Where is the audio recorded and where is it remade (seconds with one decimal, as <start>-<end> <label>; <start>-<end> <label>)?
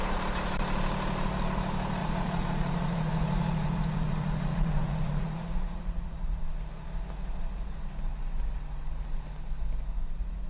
0.0-2.0 recorded; 2.0-6.4 remade; 6.4-10.5 recorded